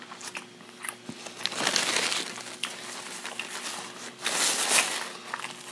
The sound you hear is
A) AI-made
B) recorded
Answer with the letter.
B